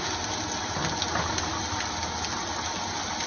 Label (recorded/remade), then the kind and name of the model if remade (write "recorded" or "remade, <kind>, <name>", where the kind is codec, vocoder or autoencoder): recorded